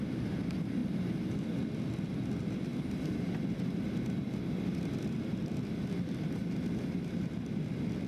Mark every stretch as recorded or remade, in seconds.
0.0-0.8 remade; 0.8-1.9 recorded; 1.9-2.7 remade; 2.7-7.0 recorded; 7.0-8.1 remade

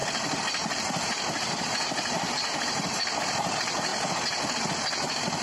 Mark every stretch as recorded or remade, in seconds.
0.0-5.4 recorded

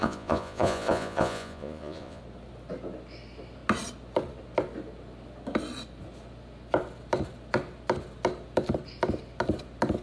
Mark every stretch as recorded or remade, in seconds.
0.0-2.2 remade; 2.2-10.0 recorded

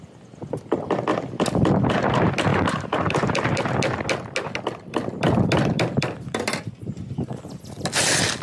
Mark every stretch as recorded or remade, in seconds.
0.0-2.5 recorded; 2.5-3.4 remade; 3.4-8.4 recorded